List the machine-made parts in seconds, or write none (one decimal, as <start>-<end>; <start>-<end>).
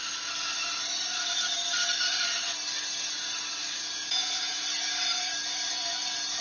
3.8-4.6